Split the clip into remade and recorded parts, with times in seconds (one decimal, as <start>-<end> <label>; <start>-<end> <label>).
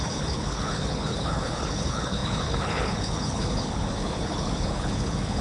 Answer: 0.0-5.4 remade